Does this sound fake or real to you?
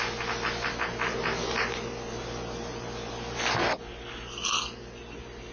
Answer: real